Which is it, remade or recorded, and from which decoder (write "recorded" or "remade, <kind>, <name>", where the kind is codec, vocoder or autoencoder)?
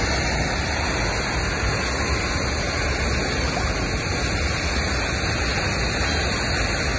recorded